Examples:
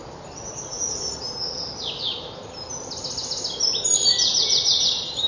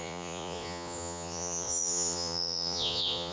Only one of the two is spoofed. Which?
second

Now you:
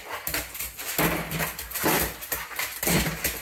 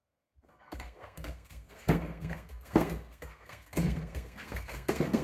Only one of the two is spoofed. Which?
second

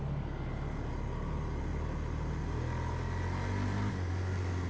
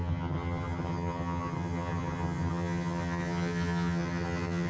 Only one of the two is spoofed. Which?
second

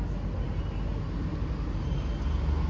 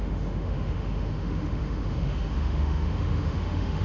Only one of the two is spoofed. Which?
second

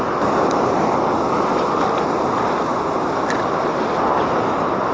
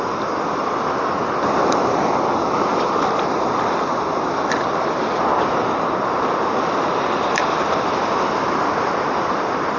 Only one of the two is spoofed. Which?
second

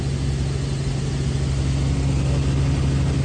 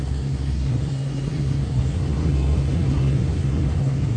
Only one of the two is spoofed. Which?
second